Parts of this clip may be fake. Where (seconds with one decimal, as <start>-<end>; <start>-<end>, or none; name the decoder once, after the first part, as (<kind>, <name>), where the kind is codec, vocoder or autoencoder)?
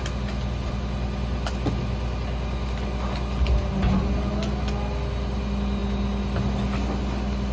none